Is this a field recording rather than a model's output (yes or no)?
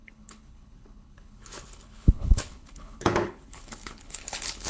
no